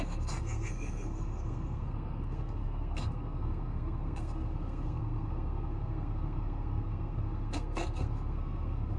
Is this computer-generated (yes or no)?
yes